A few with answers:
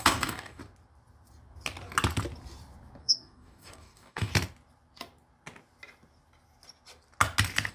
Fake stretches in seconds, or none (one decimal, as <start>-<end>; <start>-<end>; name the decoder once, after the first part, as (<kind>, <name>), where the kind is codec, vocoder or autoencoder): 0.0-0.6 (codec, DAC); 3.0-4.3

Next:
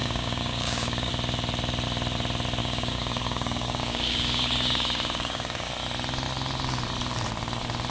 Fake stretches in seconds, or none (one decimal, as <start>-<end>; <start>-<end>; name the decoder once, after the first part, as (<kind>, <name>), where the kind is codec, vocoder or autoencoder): 0.0-1.1 (codec, DAC); 2.6-5.7

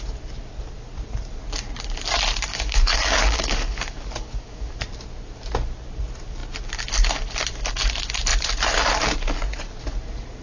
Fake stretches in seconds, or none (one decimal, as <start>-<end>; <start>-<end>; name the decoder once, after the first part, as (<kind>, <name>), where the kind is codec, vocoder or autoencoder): 2.5-4.8 (codec, DAC)

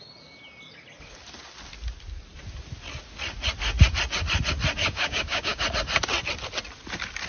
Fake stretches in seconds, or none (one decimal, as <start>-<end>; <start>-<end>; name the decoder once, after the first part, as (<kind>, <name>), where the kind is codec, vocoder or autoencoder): 4.8-5.6 (codec, DAC)

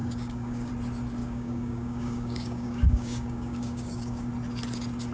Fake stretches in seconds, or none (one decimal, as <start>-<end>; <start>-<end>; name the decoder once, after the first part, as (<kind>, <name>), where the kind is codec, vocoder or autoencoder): 0.0-0.7 (codec, DAC); 1.2-4.3

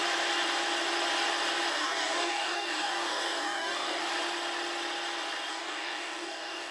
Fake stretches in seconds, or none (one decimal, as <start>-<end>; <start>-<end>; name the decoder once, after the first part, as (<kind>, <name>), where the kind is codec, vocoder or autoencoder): 1.7-4.0 (codec, DAC); 5.5-6.7

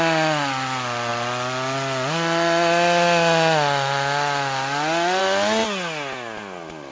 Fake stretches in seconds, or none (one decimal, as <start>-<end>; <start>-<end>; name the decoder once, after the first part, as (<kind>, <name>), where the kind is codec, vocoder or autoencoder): none

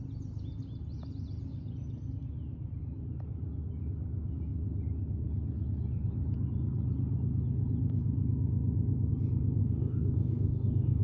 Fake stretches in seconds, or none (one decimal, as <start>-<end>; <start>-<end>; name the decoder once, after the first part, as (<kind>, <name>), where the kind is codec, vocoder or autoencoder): 9.6-11.0 (codec, DAC)